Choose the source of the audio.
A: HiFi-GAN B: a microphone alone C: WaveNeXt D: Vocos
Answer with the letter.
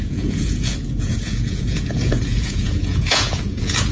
D